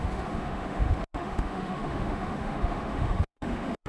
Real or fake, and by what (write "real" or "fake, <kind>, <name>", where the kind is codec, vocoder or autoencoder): fake, autoencoder, DAC-VAE